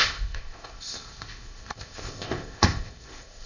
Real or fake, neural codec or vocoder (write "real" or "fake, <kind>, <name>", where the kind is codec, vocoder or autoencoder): fake, codec, ZipCodec